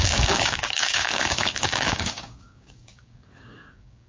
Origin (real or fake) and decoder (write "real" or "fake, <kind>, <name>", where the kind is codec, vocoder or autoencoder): fake, codec, DAC